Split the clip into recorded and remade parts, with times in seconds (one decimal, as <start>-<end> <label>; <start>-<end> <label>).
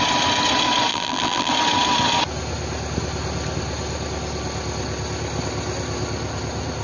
0.0-0.9 recorded; 0.9-1.5 remade; 1.5-6.8 recorded